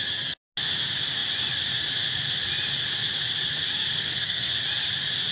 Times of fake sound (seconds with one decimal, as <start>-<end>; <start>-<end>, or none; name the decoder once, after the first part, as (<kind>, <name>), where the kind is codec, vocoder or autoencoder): 3.9-4.5 (codec, SNAC)